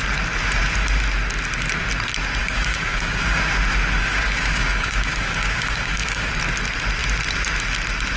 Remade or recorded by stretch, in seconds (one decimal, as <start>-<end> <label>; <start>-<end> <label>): 0.0-2.4 recorded; 2.4-3.4 remade; 3.4-4.0 recorded; 4.0-6.3 remade; 6.3-8.2 recorded